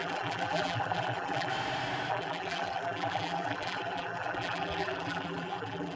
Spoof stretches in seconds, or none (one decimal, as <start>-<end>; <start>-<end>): 0.0-1.5; 2.1-6.0